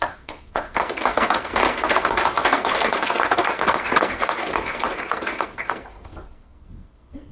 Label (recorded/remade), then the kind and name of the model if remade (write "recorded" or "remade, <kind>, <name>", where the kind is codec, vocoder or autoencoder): remade, codec, SNAC